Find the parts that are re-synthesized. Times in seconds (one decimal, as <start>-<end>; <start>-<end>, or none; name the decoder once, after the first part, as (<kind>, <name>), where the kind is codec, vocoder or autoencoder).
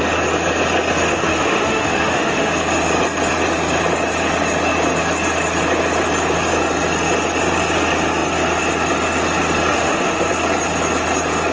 1.1-2.5 (autoencoder, DAC-VAE); 9.7-10.3